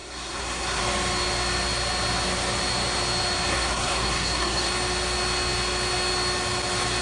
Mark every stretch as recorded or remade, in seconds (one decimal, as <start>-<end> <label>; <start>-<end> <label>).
0.0-0.8 remade; 0.8-3.5 recorded; 3.5-4.7 remade; 4.7-7.0 recorded